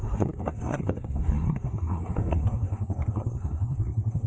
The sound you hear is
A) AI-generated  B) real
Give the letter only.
A